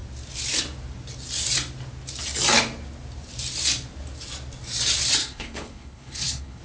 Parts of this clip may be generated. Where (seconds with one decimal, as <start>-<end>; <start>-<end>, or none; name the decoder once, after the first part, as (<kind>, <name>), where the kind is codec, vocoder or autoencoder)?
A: 5.2-6.6 (codec, HILCodec)